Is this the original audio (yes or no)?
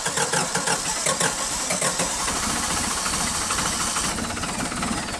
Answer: yes